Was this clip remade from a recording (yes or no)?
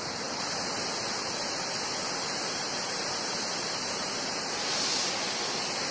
no